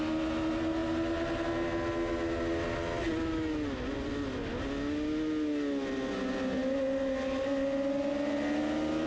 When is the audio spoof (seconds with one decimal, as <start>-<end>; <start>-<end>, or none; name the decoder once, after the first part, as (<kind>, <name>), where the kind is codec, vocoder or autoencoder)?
none